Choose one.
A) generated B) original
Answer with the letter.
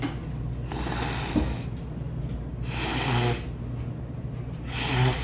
B